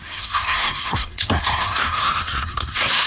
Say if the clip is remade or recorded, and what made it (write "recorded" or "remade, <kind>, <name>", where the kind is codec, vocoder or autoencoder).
remade, codec, SNAC